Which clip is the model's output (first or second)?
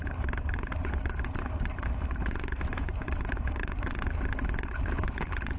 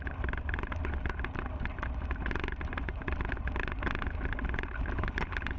first